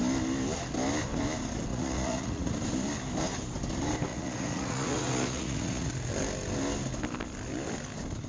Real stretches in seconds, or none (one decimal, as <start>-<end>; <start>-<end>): 0.0-1.7; 2.5-4.1; 5.9-8.3